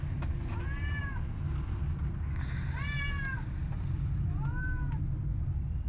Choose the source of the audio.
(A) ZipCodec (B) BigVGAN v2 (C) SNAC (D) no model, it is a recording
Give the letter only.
D